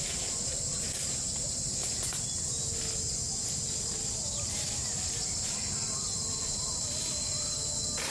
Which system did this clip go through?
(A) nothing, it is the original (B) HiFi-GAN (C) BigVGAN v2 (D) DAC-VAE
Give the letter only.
A